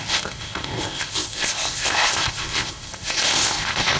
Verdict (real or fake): fake